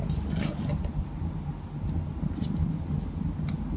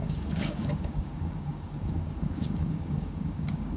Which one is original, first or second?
first